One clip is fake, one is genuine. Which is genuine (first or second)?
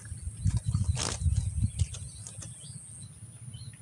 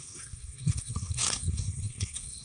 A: first